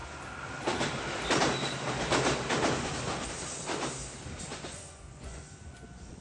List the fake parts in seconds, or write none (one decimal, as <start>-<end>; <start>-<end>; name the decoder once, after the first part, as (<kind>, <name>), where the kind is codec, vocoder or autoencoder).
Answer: 4.5-6.2 (vocoder, Vocos)

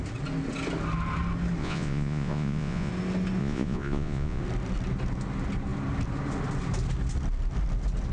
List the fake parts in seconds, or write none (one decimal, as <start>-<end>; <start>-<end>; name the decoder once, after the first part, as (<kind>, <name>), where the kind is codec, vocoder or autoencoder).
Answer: 1.6-2.9 (vocoder, Vocos); 3.4-4.4

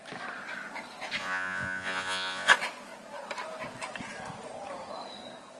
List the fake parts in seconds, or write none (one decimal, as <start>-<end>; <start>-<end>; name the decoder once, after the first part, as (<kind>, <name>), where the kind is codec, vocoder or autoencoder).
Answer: 1.2-2.5 (vocoder, Vocos)

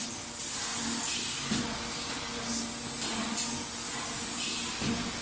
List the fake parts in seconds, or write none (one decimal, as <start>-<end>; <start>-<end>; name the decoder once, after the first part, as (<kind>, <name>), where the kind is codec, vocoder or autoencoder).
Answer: none